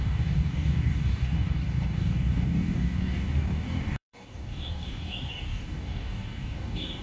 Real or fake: fake